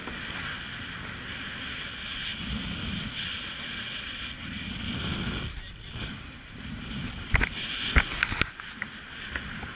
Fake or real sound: real